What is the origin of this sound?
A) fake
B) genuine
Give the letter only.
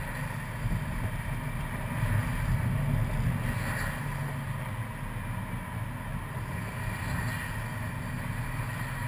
B